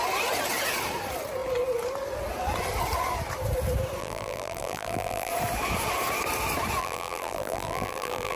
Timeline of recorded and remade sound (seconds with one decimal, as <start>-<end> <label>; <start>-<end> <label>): 0.0-4.0 recorded; 4.0-5.3 remade; 5.3-6.8 recorded; 6.8-8.4 remade